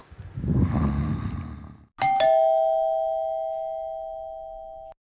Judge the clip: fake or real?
real